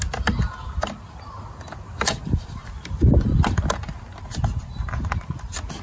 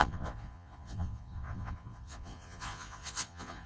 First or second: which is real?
first